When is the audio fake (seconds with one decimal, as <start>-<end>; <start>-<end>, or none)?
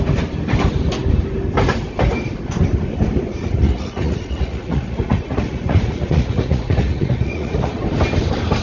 3.3-7.8